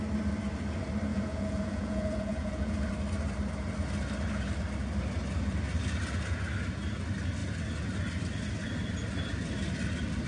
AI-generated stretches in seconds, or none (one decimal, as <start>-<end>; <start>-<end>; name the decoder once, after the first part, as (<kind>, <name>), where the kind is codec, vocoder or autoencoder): 1.1-2.9 (vocoder, Vocos)